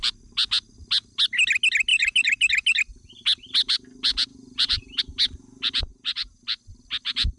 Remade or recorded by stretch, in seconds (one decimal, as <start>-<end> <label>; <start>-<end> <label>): 0.0-1.9 recorded; 1.9-2.8 remade; 2.8-4.3 recorded; 4.3-5.0 remade; 5.0-5.9 recorded; 5.9-6.4 remade; 6.4-7.4 recorded